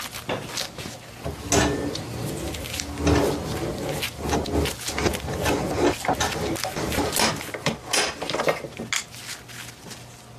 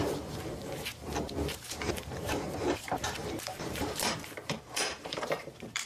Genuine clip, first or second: first